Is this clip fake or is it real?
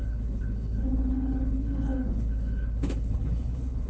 fake